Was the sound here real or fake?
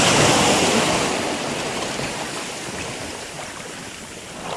fake